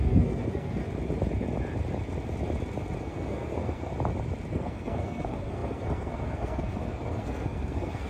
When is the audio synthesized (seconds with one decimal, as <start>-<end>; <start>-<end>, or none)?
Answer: 0.0-0.8; 3.0-3.9; 4.5-8.1